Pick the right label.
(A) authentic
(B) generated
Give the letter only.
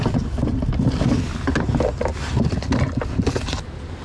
A